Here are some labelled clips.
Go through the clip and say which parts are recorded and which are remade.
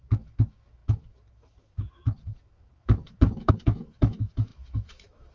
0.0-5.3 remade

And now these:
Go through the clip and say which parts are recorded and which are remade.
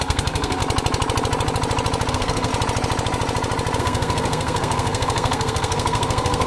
0.0-0.6 remade; 0.6-2.1 recorded; 2.1-2.5 remade; 2.5-3.8 recorded; 3.8-6.5 remade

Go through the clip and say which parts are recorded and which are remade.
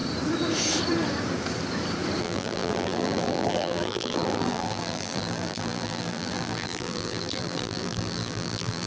0.0-2.2 recorded; 2.2-8.9 remade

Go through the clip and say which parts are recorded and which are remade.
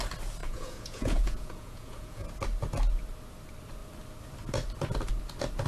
0.0-0.4 recorded; 0.4-2.3 remade; 2.3-5.7 recorded